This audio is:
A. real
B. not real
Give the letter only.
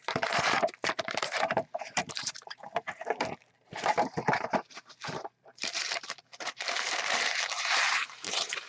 B